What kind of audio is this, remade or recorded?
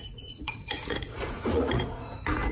remade